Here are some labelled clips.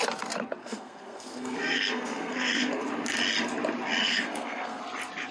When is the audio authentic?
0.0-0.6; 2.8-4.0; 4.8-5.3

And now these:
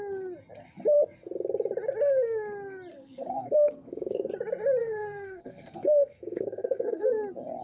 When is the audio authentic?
0.0-2.9; 4.3-4.8; 7.1-7.6

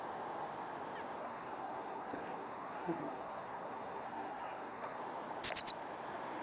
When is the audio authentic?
0.0-1.2; 5.0-6.4

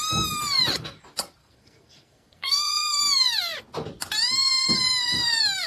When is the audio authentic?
0.0-1.4; 3.0-5.7